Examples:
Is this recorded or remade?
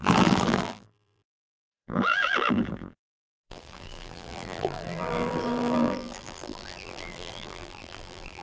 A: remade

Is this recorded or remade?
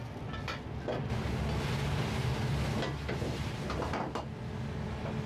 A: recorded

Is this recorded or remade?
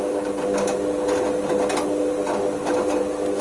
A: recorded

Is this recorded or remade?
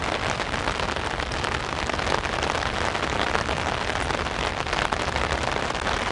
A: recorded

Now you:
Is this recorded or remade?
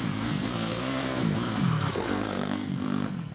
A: remade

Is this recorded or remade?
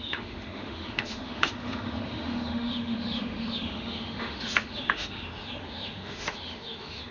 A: remade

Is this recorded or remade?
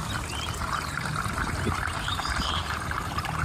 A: remade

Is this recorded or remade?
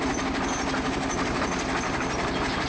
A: recorded